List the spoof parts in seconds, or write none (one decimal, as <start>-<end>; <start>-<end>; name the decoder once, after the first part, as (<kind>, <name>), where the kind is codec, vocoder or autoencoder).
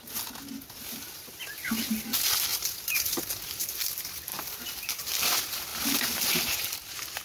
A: 4.3-5.1 (vocoder, BigVGAN v2); 5.7-7.2